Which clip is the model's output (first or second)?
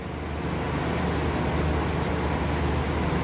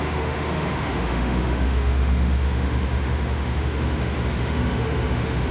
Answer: second